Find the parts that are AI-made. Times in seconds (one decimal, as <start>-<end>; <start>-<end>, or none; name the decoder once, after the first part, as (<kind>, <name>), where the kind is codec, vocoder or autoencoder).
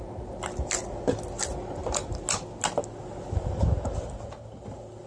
none